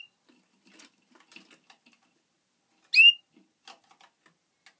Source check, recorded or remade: recorded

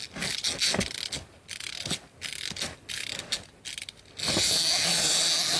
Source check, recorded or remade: recorded